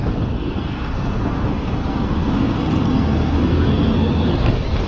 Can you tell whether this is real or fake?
fake